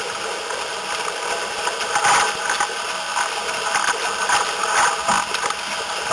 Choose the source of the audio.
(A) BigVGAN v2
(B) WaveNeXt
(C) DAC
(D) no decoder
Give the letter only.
D